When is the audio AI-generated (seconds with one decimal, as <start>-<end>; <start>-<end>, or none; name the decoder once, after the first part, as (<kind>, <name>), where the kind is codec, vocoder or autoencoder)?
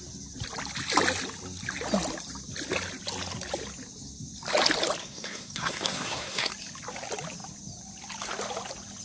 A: 5.0-6.5 (codec, SNAC)